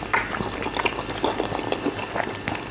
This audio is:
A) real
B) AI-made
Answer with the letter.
A